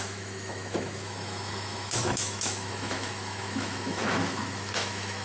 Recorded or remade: remade